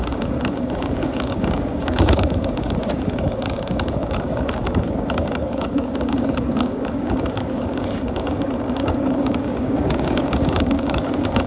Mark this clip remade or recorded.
remade